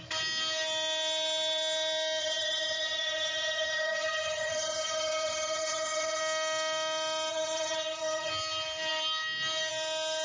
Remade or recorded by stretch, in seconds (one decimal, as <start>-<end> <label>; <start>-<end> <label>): 0.0-2.2 recorded; 2.2-6.2 remade; 6.2-7.3 recorded; 7.3-8.3 remade; 8.3-10.2 recorded